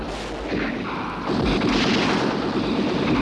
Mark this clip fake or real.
real